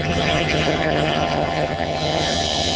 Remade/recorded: remade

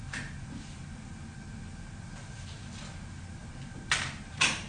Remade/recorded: recorded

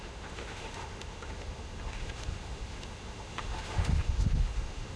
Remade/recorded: remade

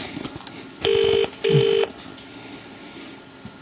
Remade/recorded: recorded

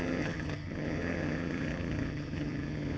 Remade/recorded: remade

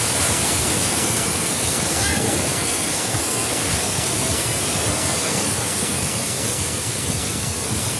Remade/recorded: remade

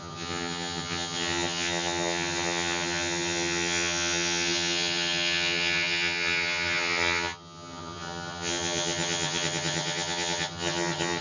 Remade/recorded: remade